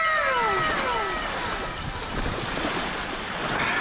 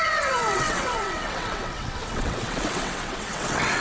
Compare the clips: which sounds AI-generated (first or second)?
second